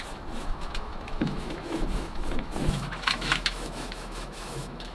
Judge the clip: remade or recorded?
remade